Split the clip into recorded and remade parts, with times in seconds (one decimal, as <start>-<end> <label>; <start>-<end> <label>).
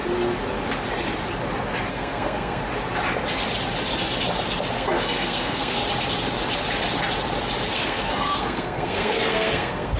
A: 0.0-1.9 recorded; 1.9-2.6 remade; 2.6-4.7 recorded; 4.7-5.8 remade; 5.8-7.7 recorded; 7.7-10.0 remade